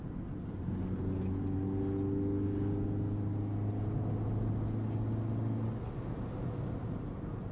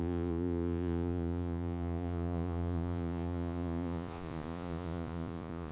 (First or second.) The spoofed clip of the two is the second